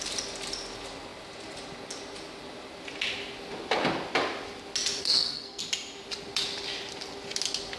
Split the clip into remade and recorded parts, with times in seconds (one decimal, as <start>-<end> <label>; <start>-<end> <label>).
0.0-5.0 recorded; 5.0-5.6 remade; 5.6-7.8 recorded

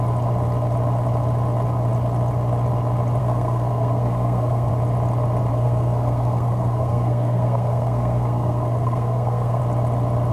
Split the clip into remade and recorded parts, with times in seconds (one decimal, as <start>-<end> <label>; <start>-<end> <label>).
0.0-3.2 recorded; 3.2-4.7 remade; 4.7-5.5 recorded; 5.5-9.6 remade; 9.6-10.3 recorded

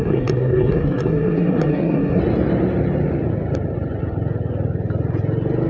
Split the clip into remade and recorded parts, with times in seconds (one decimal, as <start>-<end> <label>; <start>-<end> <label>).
0.0-2.2 remade; 2.2-5.7 recorded

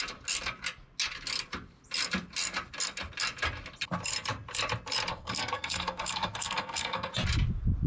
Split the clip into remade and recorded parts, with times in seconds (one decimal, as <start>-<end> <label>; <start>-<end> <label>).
0.0-5.1 recorded; 5.1-7.1 remade; 7.1-7.9 recorded

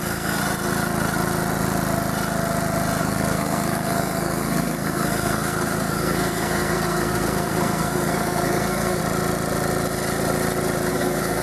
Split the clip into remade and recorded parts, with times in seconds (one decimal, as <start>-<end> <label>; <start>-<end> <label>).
0.0-0.4 remade; 0.4-3.0 recorded; 3.0-9.0 remade; 9.0-10.9 recorded; 10.9-11.4 remade

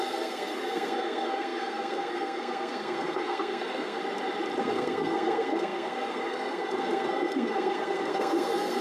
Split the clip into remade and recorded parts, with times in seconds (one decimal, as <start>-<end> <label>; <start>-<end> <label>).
0.0-4.0 remade; 4.0-4.6 recorded; 4.6-8.8 remade